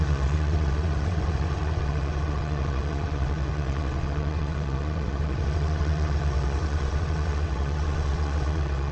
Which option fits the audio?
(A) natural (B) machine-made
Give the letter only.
B